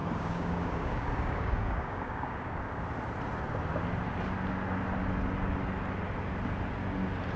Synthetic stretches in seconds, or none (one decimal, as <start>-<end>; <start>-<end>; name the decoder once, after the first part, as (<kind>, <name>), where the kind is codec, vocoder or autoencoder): 0.0-2.8 (codec, DAC)